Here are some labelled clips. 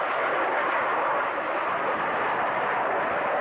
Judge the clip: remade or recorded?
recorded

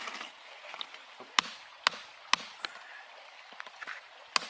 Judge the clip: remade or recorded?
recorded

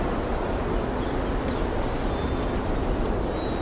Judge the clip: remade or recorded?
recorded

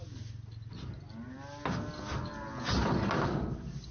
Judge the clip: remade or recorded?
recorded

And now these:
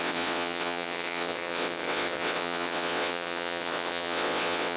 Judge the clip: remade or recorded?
remade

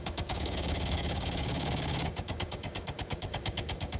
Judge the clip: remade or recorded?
remade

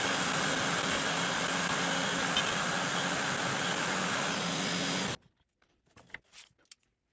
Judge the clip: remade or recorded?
recorded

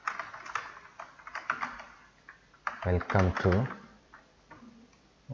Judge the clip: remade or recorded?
remade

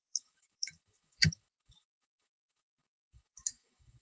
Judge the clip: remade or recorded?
remade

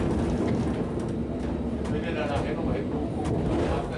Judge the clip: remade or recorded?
recorded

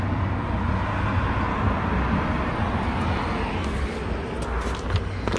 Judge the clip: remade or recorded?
recorded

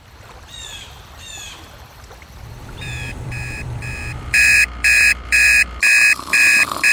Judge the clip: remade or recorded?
remade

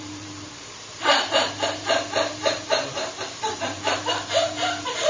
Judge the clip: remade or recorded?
remade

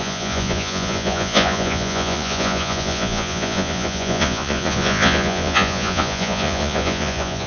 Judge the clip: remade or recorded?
remade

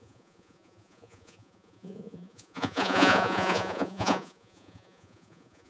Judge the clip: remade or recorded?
remade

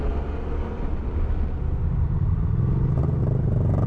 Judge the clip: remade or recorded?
recorded